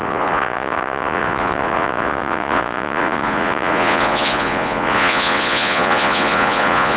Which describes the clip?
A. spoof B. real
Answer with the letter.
A